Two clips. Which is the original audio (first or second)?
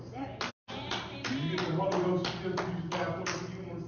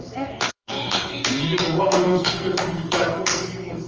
first